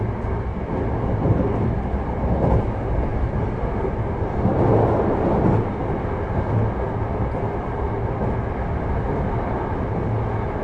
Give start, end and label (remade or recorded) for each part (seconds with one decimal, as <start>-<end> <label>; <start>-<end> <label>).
0.0-10.6 recorded